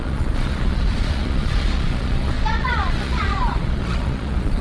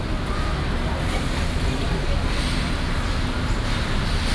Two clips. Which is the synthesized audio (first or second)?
first